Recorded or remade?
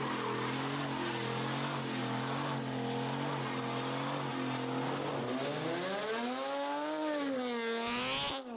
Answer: recorded